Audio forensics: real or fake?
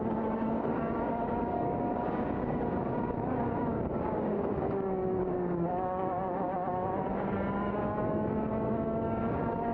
fake